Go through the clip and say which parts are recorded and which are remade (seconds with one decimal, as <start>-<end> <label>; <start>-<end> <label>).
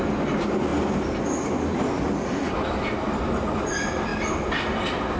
0.0-5.2 recorded